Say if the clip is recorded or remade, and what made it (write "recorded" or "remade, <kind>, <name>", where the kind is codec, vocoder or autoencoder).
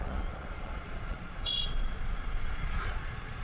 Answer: remade, vocoder, Vocos